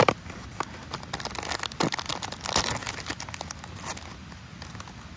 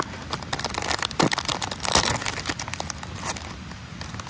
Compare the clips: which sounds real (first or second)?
first